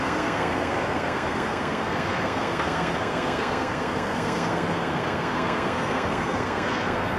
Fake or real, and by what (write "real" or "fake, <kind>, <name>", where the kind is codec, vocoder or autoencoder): fake, codec, SNAC